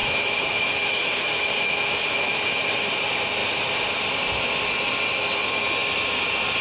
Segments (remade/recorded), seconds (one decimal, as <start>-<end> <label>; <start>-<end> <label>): 0.0-2.4 remade; 2.4-6.6 recorded